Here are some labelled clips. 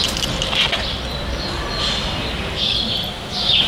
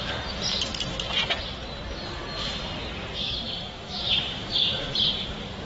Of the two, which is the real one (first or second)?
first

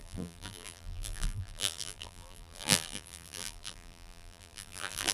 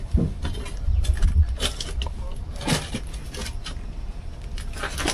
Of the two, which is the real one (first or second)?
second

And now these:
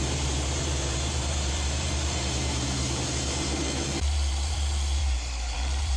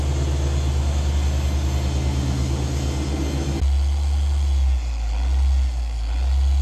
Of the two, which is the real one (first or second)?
second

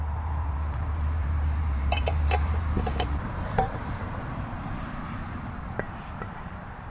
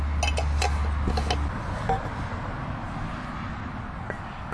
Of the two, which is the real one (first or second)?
second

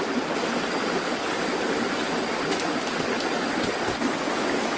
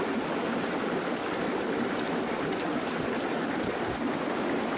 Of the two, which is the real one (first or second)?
first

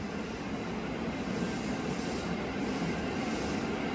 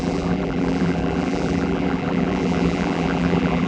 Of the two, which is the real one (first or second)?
first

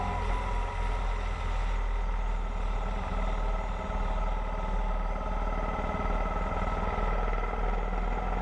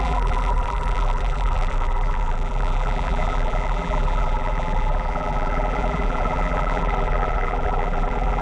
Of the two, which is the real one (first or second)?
first